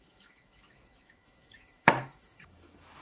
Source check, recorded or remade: remade